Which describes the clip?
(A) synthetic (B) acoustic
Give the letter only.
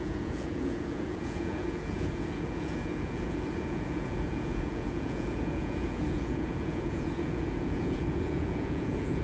A